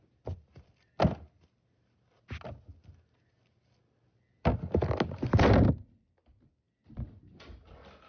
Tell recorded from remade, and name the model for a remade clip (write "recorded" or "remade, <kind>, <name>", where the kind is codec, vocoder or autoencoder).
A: recorded